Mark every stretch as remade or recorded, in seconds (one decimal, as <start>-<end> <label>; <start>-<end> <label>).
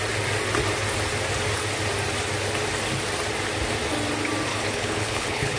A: 0.0-4.5 recorded; 4.5-5.6 remade